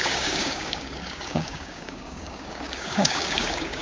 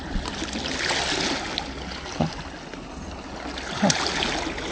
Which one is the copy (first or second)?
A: first